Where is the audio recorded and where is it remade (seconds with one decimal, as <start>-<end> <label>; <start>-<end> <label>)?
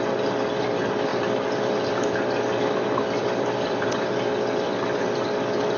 0.0-1.1 recorded; 1.1-1.7 remade; 1.7-3.2 recorded; 3.2-3.9 remade; 3.9-5.8 recorded